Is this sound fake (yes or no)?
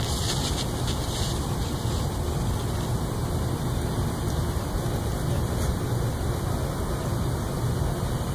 no